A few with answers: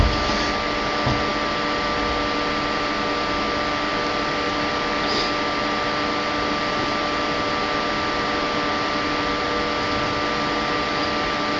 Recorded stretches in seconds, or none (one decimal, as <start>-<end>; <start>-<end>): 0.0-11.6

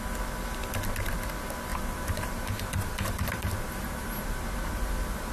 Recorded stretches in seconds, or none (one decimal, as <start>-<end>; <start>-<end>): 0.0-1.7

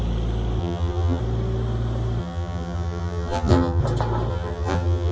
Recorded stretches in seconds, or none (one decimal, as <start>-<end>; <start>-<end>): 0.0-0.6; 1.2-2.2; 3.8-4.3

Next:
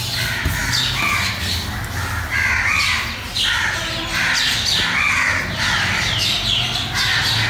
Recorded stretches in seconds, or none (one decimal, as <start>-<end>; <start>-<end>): 0.0-7.5

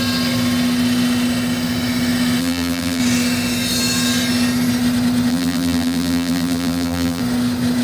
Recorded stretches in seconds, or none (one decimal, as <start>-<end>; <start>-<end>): 0.0-2.4; 3.0-5.3; 7.2-7.8

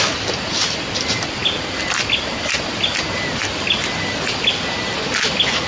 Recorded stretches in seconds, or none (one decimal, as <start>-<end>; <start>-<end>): 0.0-5.7